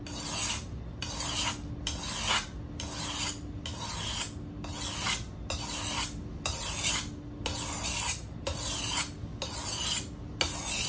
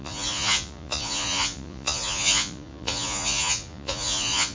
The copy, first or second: second